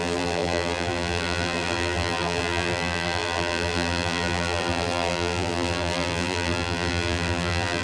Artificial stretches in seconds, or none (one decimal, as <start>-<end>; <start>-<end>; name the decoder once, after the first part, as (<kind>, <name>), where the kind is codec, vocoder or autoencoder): 0.0-7.8 (vocoder, BigVGAN v2)